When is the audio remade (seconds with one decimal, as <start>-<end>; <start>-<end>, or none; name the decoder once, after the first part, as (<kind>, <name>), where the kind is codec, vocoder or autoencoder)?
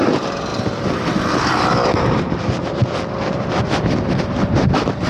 none